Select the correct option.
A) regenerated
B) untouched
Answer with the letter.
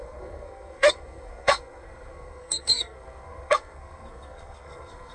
A